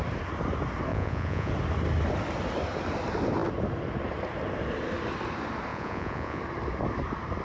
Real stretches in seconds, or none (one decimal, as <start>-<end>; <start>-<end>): 0.0-0.9; 1.5-5.7; 6.4-7.4